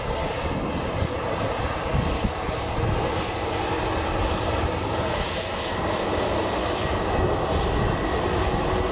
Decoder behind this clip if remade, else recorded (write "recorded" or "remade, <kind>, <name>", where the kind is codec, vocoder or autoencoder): recorded